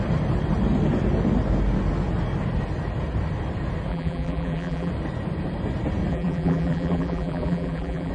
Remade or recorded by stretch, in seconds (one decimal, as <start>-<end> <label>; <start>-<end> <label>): 0.0-3.9 recorded; 3.9-4.9 remade; 4.9-6.1 recorded; 6.1-8.1 remade